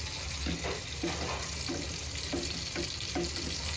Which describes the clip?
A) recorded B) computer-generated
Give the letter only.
A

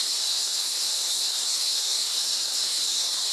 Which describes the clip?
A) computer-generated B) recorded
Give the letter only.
A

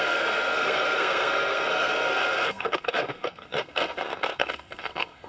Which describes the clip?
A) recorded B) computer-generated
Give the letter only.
B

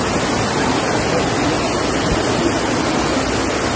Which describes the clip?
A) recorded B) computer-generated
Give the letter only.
A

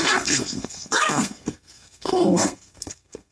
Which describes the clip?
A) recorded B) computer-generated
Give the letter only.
B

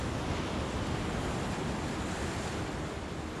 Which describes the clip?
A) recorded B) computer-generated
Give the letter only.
A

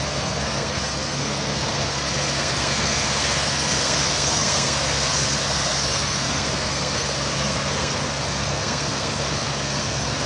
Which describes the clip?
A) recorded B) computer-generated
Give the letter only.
B